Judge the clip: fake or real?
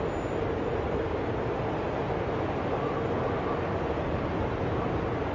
real